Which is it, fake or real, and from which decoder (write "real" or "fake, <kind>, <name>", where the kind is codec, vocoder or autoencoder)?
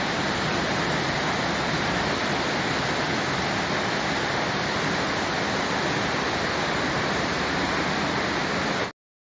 real